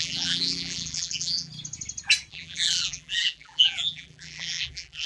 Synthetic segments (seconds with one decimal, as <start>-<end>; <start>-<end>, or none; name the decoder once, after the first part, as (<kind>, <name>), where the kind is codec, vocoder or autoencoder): 0.0-1.5 (vocoder, BigVGAN v2); 2.3-5.1

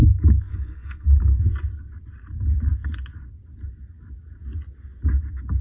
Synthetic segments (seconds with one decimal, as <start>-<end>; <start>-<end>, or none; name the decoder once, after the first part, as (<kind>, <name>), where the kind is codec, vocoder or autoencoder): 0.0-1.4 (codec, SNAC)

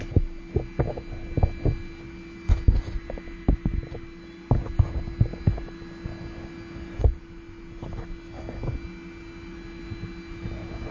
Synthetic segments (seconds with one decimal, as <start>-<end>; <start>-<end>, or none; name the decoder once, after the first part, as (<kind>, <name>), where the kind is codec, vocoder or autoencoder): none

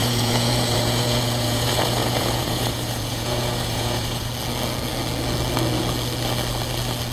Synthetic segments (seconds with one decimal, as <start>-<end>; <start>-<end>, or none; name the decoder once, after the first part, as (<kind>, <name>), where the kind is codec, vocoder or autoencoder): 0.0-4.3 (vocoder, Vocos)